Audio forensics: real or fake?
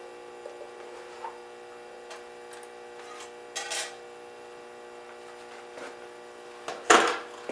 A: real